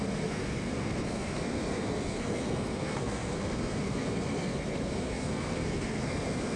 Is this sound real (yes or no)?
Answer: no